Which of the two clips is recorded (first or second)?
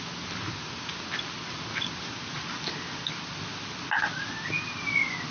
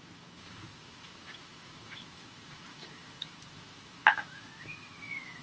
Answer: first